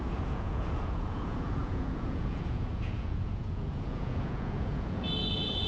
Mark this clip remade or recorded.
remade